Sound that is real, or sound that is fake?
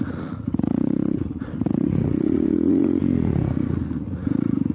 fake